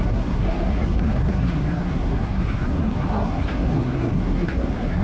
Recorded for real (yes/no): no